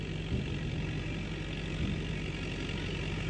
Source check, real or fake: real